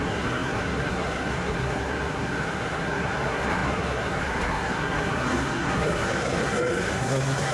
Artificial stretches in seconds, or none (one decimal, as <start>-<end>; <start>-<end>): 0.0-7.5